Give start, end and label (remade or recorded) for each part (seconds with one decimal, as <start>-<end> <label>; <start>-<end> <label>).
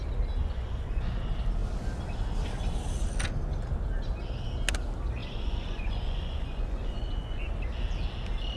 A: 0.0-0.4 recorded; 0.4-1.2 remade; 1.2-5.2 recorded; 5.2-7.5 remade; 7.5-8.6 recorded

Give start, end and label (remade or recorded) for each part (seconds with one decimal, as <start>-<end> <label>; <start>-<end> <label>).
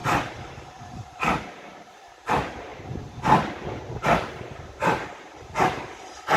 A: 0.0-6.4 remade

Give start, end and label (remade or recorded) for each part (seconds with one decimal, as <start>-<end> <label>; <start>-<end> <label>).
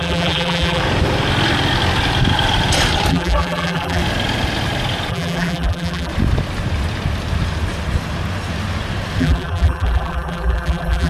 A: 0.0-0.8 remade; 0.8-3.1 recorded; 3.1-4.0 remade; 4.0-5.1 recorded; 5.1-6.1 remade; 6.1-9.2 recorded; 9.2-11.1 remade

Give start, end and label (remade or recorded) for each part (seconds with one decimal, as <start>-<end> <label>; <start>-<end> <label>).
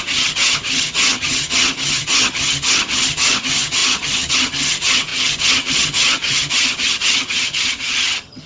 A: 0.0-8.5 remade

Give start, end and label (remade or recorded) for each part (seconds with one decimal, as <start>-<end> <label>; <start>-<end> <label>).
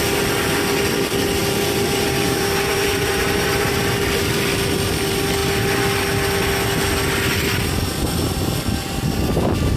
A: 0.0-1.4 recorded; 1.4-3.8 remade; 3.8-9.8 recorded